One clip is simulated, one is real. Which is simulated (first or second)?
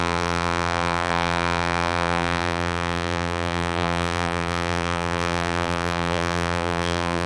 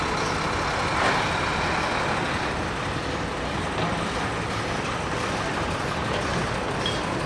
first